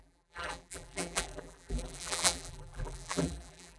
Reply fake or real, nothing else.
fake